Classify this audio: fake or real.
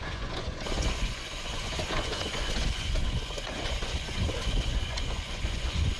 fake